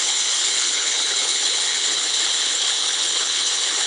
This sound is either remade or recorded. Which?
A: remade